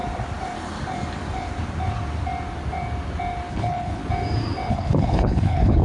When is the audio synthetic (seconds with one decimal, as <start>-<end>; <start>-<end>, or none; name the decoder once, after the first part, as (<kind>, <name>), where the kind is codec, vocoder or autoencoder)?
3.5-4.0 (codec, HILCodec); 4.7-5.8